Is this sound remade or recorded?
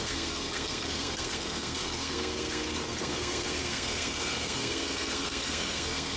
remade